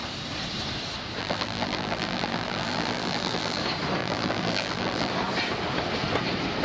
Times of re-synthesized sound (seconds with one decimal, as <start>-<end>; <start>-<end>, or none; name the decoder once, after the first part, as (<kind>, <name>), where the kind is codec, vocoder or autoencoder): 1.2-3.6 (vocoder, BigVGAN v2); 4.0-5.1